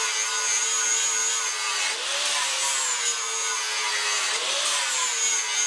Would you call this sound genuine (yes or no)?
yes